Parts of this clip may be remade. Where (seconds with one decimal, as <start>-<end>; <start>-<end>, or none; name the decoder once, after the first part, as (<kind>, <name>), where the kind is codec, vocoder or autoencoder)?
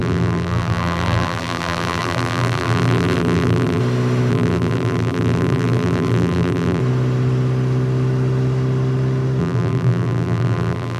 0.0-3.8 (vocoder, BigVGAN v2); 4.3-6.8; 9.4-11.0